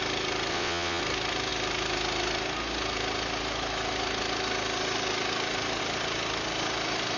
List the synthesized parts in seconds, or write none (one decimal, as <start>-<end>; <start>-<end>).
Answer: 0.5-1.0